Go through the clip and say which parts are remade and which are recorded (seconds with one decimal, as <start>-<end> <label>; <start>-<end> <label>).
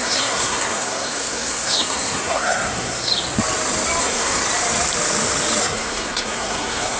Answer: 0.0-3.1 remade; 3.1-4.0 recorded; 4.0-4.4 remade; 4.4-5.6 recorded; 5.6-7.0 remade